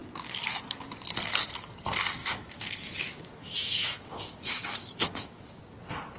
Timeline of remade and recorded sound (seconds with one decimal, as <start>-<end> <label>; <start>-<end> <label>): 0.0-2.2 recorded; 2.2-5.6 remade; 5.6-6.2 recorded

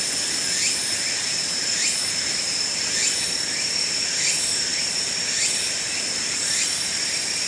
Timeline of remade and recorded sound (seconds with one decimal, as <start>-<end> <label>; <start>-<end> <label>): 0.0-7.5 recorded

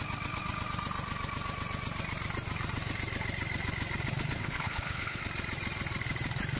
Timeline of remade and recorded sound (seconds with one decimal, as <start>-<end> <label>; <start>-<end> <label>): 0.0-4.4 recorded; 4.4-5.2 remade; 5.2-6.6 recorded

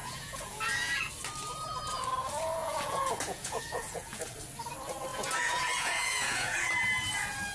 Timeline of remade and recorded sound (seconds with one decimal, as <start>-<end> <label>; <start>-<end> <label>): 0.0-1.1 remade; 1.1-2.6 recorded; 2.6-4.2 remade; 4.2-5.1 recorded; 5.1-6.7 remade; 6.7-7.5 recorded

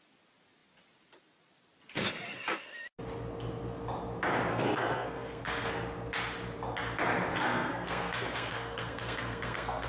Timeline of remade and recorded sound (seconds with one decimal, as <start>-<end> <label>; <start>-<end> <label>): 0.0-4.5 recorded; 4.5-5.7 remade; 5.7-7.3 recorded; 7.3-9.9 remade

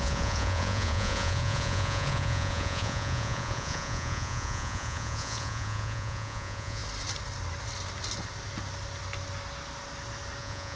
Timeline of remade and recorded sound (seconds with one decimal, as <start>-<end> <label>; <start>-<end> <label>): 0.0-6.8 remade; 6.8-10.4 recorded; 10.4-10.8 remade

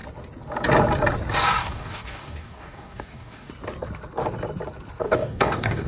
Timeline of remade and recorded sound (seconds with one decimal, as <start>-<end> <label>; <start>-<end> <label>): 0.0-1.6 recorded; 1.6-3.5 remade; 3.5-5.0 recorded; 5.0-5.9 remade

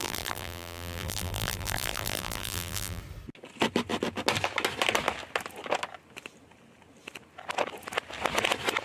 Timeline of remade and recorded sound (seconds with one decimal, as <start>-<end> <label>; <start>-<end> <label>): 0.0-3.0 remade; 3.0-8.8 recorded